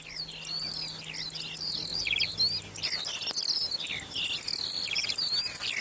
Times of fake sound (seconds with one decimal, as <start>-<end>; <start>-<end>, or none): none